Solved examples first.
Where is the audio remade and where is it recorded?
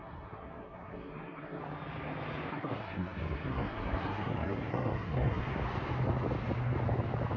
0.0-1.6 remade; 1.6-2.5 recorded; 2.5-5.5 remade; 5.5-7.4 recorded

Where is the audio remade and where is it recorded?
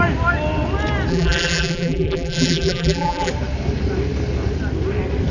0.0-1.1 recorded; 1.1-3.3 remade; 3.3-5.3 recorded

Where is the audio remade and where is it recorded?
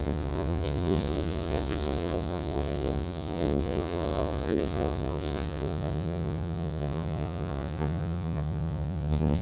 0.0-9.4 remade